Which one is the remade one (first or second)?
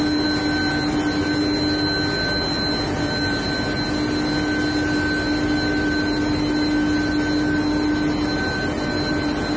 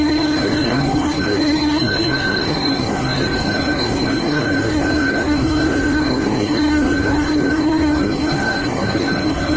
second